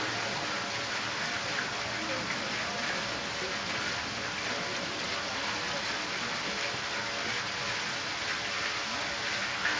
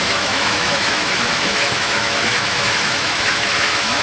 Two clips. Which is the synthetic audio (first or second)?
second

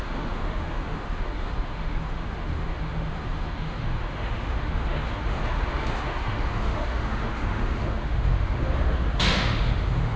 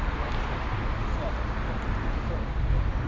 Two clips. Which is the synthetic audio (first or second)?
first